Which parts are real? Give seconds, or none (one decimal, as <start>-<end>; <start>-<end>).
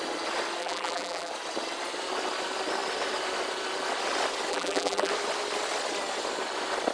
0.0-0.6; 1.3-4.5; 5.1-6.9